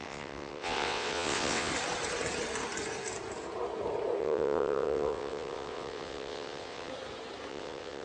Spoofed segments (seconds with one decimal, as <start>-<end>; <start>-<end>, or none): 0.0-1.7; 4.2-6.9; 7.5-8.0